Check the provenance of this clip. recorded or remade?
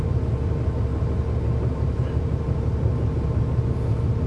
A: recorded